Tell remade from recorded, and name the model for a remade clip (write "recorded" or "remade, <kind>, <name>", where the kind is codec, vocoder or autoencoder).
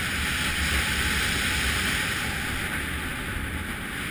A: recorded